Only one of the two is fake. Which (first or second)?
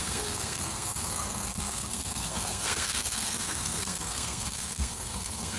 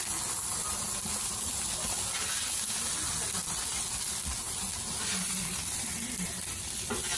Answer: first